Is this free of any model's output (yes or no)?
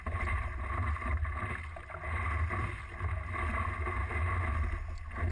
yes